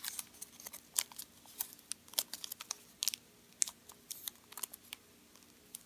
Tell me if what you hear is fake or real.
real